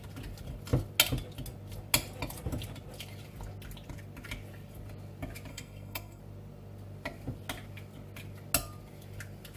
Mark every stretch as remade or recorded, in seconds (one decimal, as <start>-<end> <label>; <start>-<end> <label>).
0.0-5.5 recorded; 5.5-6.2 remade; 6.2-9.6 recorded